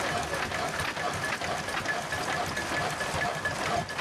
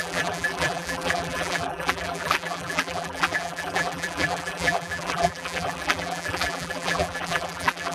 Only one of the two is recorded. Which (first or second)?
first